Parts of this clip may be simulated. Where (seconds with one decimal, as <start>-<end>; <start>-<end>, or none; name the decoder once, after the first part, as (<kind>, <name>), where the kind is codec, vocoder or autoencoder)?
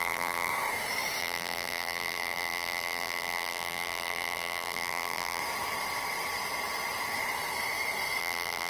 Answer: 0.0-0.5 (vocoder, BigVGAN v2); 1.2-5.4; 8.2-8.7